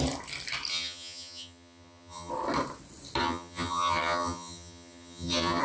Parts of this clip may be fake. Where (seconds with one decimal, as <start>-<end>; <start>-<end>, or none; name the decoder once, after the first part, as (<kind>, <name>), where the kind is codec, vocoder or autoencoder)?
0.7-2.3 (vocoder, HiFi-GAN); 3.2-5.6